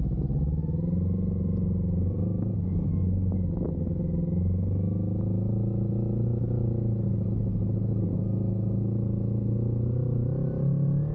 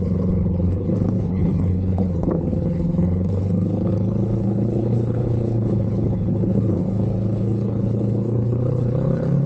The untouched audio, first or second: first